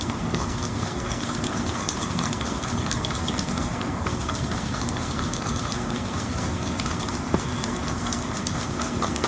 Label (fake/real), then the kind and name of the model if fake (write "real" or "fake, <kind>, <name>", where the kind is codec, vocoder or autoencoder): fake, codec, SNAC